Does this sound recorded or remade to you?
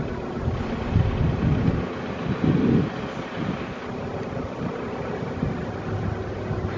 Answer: recorded